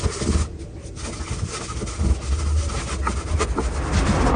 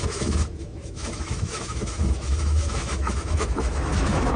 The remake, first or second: second